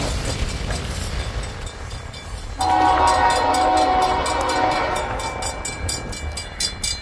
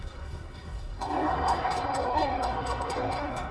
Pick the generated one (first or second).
second